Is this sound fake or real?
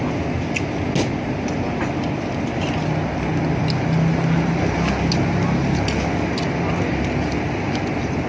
real